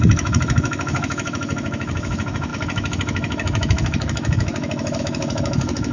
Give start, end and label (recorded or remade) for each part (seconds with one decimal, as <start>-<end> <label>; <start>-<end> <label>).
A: 0.0-5.9 remade